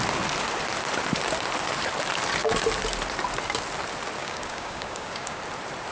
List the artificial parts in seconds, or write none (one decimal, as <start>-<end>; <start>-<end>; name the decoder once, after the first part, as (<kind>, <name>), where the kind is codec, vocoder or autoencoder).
4.2-5.4 (codec, DAC)